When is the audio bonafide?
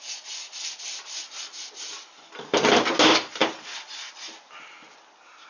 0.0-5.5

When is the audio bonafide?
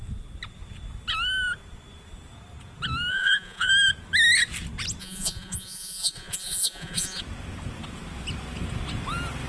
0.0-3.1; 3.7-5.0; 7.2-9.5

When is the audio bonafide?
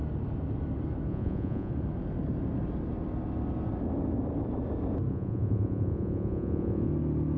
0.0-1.1; 1.7-5.1; 6.9-7.4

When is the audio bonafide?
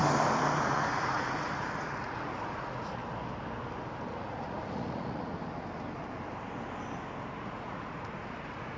0.0-0.6; 3.0-4.1; 5.2-7.4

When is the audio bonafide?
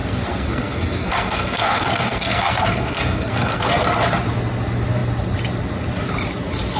3.6-6.8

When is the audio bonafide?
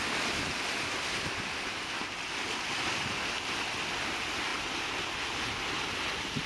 0.0-6.5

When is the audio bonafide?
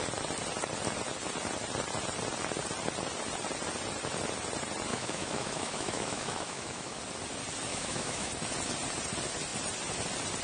0.0-4.9; 7.0-7.7; 8.3-10.4